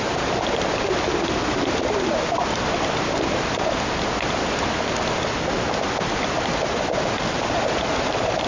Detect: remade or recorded recorded